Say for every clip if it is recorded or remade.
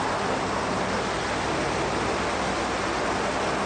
recorded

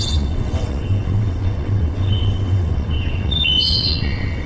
remade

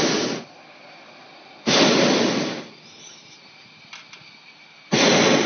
recorded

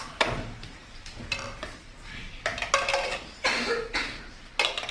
recorded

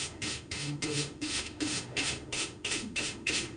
remade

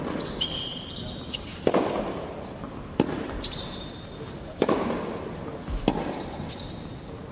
remade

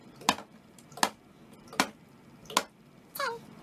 recorded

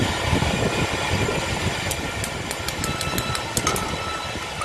recorded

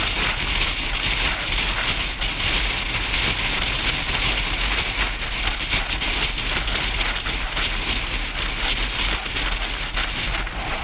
recorded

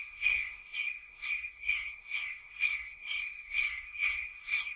remade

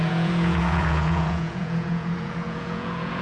remade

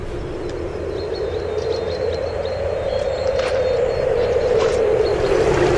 recorded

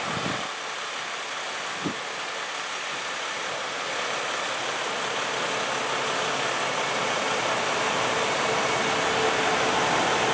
recorded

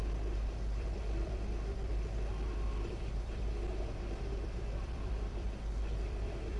remade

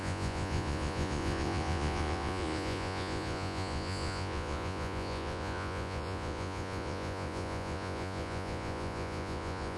remade